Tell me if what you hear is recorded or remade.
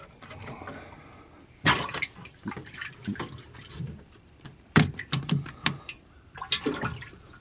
remade